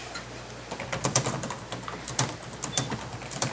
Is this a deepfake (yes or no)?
yes